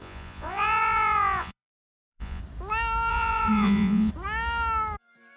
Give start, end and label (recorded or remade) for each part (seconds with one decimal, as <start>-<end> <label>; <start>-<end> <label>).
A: 0.0-2.4 remade; 2.4-3.1 recorded; 3.1-4.1 remade; 4.1-5.4 recorded